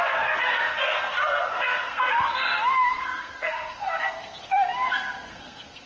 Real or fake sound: fake